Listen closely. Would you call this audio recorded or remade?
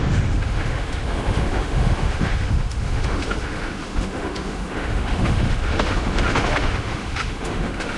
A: remade